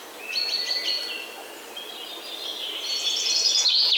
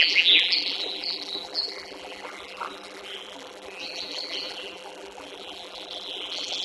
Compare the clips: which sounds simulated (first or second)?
second